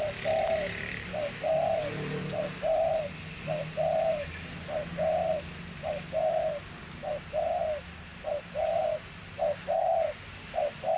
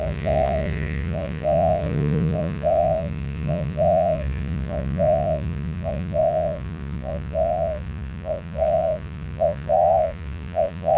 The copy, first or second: second